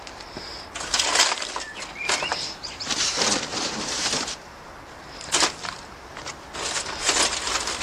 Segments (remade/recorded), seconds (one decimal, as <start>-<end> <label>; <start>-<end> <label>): 0.0-2.3 recorded; 2.3-6.0 remade; 6.0-7.8 recorded